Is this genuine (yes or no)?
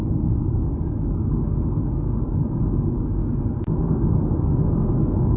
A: no